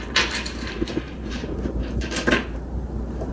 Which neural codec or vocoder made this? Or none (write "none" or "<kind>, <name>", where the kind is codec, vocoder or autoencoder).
vocoder, BigVGAN v2